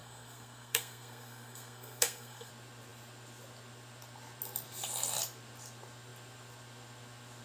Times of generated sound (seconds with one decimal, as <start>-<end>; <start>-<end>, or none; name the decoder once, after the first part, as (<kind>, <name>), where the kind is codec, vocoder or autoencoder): 0.0-2.5 (codec, SNAC)